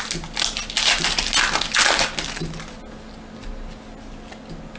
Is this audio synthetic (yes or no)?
no